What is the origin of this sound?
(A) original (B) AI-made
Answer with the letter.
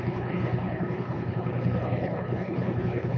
B